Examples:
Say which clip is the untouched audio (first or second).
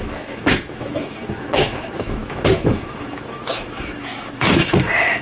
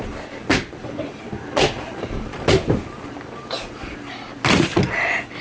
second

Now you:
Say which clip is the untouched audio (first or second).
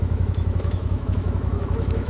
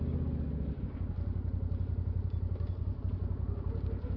second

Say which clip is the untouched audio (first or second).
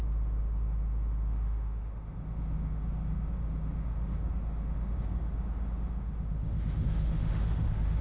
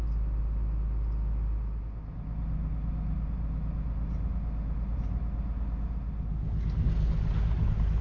second